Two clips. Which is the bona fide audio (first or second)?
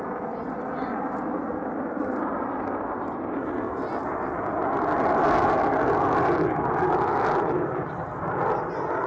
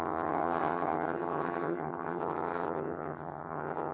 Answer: first